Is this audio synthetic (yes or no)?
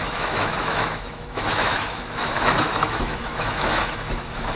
yes